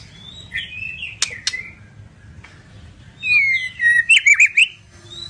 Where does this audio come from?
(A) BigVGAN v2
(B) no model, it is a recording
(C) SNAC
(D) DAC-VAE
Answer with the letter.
B